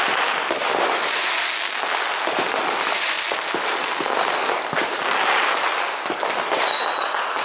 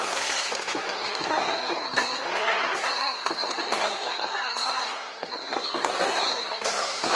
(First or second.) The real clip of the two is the first